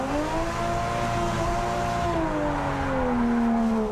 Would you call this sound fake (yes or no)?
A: no